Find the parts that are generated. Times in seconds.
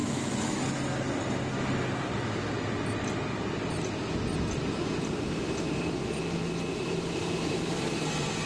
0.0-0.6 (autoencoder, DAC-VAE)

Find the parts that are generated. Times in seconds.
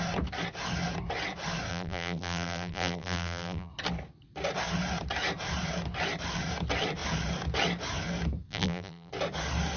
1.7-3.7 (vocoder, BigVGAN v2); 8.5-9.1